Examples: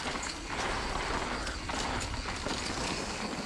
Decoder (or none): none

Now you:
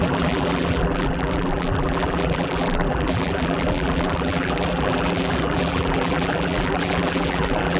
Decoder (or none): vocoder, BigVGAN v2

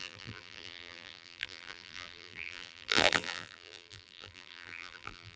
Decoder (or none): vocoder, BigVGAN v2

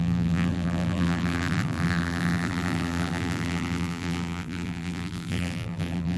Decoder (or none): vocoder, BigVGAN v2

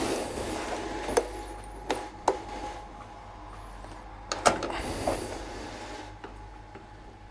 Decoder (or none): none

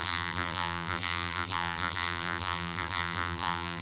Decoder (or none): vocoder, BigVGAN v2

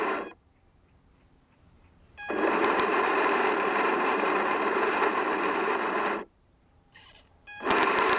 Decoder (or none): vocoder, BigVGAN v2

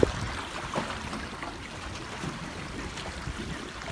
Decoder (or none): vocoder, BigVGAN v2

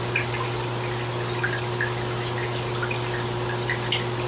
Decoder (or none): none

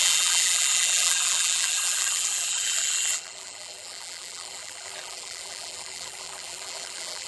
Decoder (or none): vocoder, BigVGAN v2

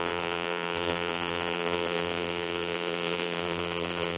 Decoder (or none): vocoder, BigVGAN v2